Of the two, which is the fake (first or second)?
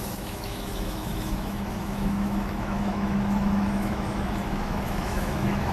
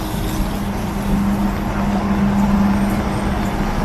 first